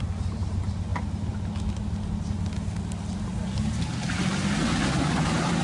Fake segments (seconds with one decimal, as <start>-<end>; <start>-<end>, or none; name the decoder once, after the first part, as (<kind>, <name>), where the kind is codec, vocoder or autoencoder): none